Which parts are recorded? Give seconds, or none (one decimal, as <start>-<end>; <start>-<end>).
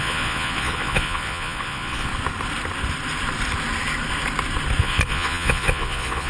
2.1-4.8